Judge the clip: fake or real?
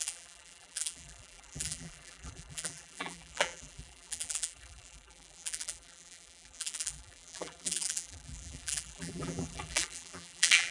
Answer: fake